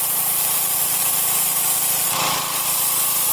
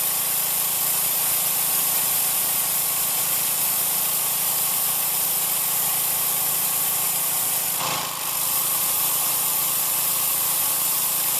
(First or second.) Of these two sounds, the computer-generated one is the second